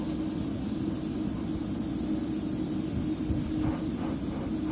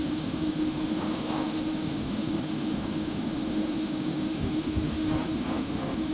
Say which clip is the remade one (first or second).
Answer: second